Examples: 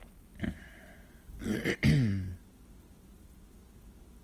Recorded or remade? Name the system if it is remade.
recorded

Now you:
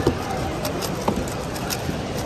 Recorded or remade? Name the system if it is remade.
remade, vocoder, BigVGAN v2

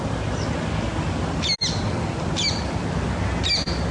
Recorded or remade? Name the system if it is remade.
recorded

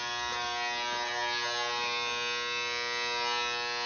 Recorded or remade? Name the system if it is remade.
recorded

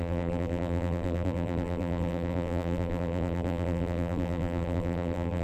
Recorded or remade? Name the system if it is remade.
remade, vocoder, BigVGAN v2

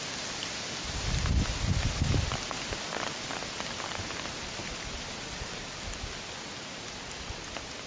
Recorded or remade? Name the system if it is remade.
recorded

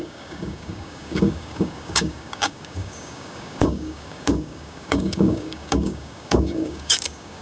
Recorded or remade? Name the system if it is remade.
remade, codec, DAC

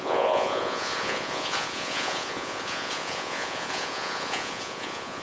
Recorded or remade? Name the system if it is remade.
remade, vocoder, Vocos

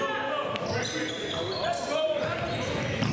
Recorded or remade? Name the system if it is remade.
recorded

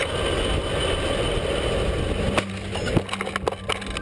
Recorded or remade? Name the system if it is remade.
recorded